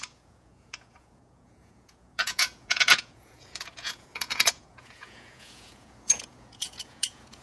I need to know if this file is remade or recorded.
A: remade